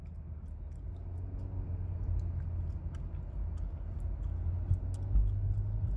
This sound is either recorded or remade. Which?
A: recorded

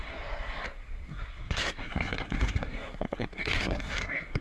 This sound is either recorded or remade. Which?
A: remade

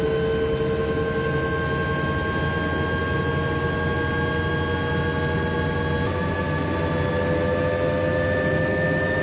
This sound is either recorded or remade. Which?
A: recorded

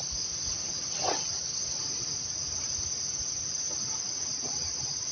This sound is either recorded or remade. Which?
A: recorded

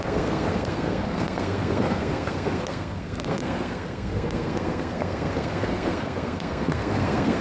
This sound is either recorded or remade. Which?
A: remade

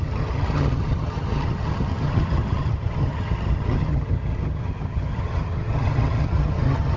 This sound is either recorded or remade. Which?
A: remade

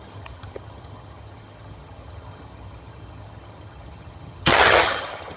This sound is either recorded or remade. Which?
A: remade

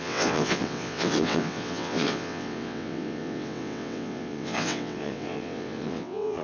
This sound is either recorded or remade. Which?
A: remade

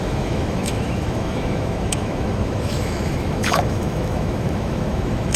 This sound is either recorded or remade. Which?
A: remade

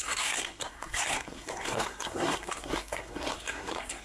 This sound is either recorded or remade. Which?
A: remade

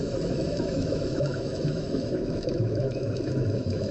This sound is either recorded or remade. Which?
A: remade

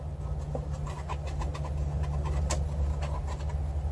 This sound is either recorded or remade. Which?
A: recorded